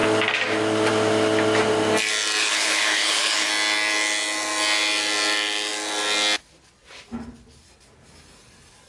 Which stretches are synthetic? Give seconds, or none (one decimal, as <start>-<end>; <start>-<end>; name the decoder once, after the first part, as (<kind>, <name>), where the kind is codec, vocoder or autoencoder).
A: 2.4-3.5 (codec, HILCodec)